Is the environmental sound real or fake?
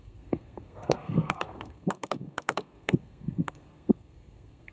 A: fake